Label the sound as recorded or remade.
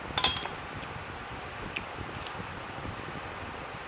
recorded